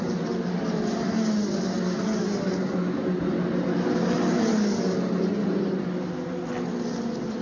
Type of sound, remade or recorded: recorded